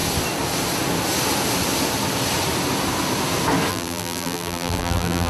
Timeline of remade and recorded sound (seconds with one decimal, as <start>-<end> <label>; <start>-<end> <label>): 0.0-3.7 recorded; 3.7-5.3 remade